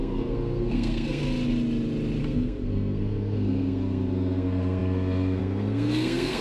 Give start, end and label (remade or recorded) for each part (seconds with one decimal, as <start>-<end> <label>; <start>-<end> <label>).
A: 0.0-1.2 remade; 1.2-2.2 recorded; 2.2-6.4 remade